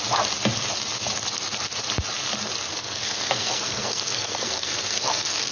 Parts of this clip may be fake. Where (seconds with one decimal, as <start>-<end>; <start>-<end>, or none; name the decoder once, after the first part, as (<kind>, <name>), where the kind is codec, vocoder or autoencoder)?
2.7-5.5 (codec, SNAC)